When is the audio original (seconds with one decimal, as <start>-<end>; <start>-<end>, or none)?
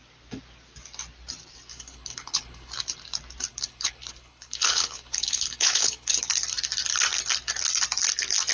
0.0-1.7; 2.7-3.5; 6.3-8.5